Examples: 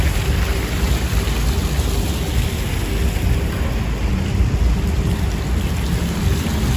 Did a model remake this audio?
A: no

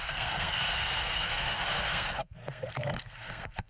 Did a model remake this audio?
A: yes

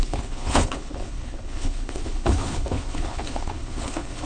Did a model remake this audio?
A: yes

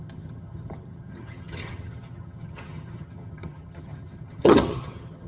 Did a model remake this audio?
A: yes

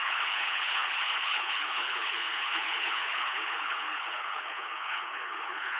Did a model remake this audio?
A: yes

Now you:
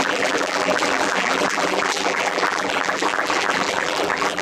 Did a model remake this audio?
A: yes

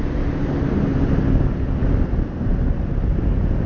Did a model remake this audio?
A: no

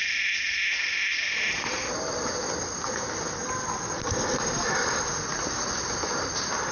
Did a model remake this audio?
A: no